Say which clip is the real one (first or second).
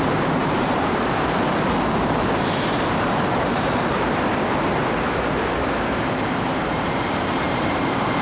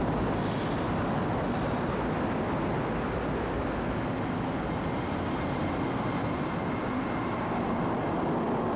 second